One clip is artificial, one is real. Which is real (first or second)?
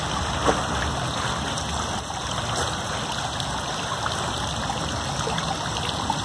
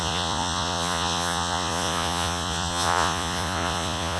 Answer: first